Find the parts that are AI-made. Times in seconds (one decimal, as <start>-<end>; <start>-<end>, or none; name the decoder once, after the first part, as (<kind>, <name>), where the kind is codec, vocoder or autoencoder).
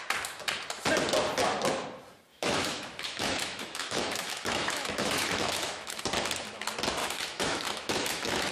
2.3-6.0 (autoencoder, DAC-VAE); 7.0-8.5